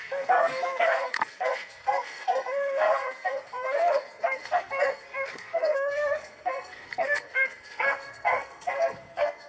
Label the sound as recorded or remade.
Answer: remade